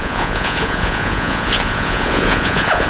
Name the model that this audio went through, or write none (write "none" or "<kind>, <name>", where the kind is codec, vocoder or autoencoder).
vocoder, Vocos